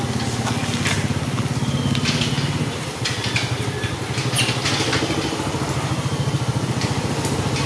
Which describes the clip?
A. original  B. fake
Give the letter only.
A